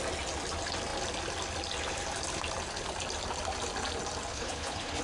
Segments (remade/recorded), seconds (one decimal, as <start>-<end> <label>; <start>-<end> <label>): 0.0-4.3 recorded; 4.3-5.0 remade